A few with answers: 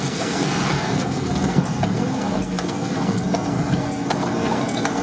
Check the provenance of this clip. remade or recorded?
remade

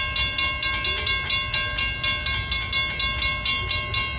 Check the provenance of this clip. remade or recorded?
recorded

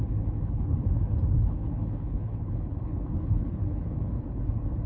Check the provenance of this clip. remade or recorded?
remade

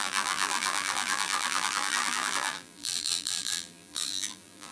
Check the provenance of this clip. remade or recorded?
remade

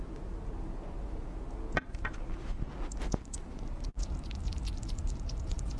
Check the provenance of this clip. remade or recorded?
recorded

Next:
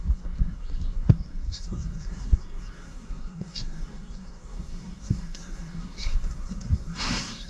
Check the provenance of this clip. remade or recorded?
remade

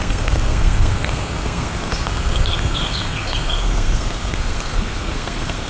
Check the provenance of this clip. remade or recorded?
remade